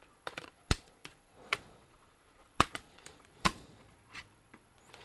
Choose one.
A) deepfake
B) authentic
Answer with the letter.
A